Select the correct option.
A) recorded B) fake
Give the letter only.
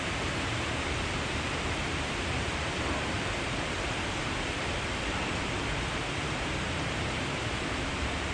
B